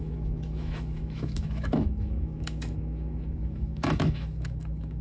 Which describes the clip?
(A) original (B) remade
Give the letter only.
B